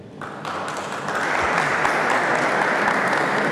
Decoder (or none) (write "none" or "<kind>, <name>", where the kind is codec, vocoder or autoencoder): none